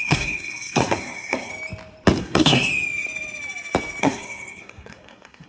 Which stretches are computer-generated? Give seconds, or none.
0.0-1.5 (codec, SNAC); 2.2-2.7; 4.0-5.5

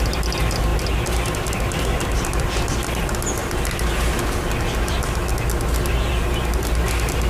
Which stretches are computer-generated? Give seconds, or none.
none

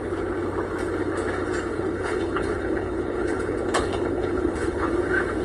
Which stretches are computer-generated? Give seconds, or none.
1.7-4.9 (codec, HILCodec)

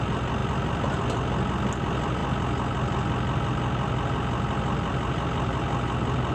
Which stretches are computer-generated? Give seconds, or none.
none